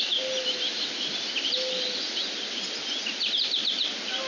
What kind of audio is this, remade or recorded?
recorded